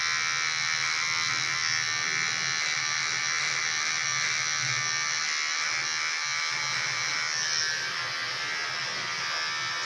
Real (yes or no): yes